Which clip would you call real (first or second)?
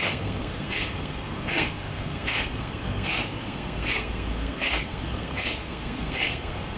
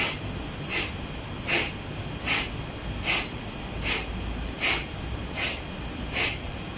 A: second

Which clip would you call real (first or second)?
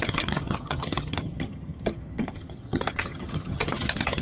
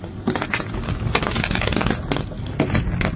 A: second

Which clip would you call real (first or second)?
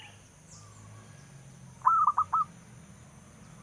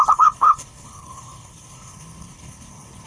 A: first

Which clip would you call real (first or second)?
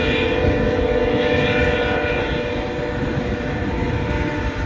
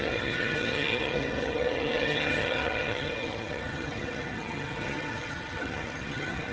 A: first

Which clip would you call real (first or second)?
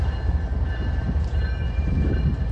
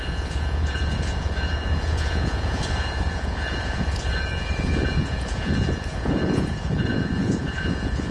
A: first